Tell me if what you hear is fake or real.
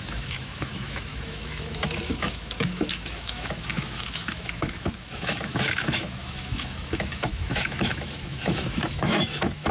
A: fake